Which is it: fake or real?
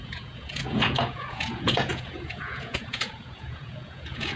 fake